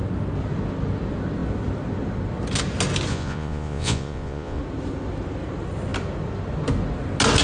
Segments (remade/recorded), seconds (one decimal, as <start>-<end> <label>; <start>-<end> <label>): 0.0-3.1 recorded; 3.1-4.6 remade; 4.6-7.4 recorded